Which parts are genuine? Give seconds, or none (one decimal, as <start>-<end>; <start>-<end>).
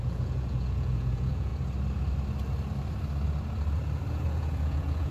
1.5-4.1